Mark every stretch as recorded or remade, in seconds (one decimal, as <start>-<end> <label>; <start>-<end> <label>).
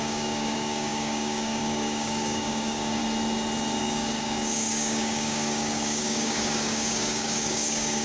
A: 0.0-3.0 remade; 3.0-3.8 recorded; 3.8-8.0 remade